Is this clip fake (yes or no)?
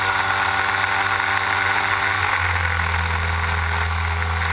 no